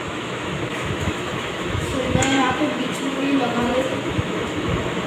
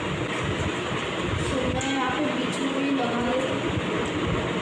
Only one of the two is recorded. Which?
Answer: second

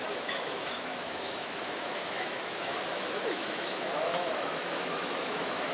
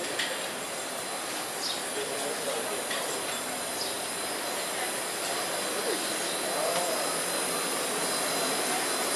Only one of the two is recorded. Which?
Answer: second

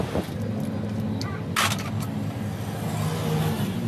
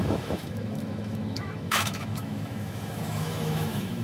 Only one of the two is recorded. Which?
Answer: first